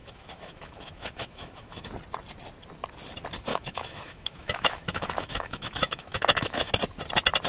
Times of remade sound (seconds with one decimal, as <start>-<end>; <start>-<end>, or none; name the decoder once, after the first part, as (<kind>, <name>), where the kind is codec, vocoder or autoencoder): 0.0-1.9 (autoencoder, DAC-VAE); 3.5-6.7